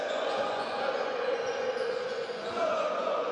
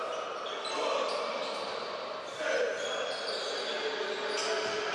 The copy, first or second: first